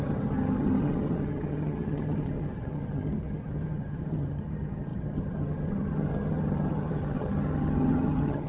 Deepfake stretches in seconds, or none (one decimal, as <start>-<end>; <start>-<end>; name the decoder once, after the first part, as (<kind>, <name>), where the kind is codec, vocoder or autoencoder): 0.0-8.5 (vocoder, HiFi-GAN)